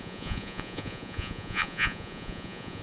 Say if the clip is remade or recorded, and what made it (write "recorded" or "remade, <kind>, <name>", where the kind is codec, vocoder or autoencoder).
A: remade, vocoder, Vocos